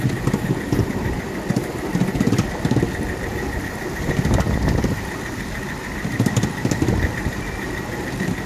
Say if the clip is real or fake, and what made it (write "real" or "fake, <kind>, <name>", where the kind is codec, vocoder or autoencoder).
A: real